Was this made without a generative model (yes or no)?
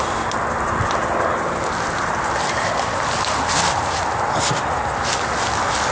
yes